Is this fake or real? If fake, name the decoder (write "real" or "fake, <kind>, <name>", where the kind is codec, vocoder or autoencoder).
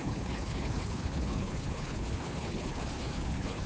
fake, codec, HILCodec